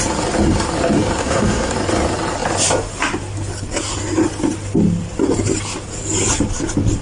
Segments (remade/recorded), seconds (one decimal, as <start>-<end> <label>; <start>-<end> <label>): 0.0-1.2 recorded; 1.2-1.7 remade; 1.7-7.0 recorded